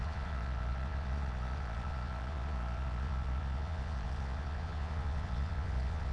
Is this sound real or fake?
fake